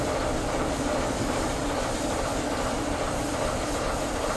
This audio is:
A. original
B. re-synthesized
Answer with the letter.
B